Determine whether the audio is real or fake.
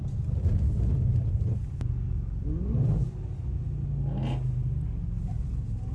real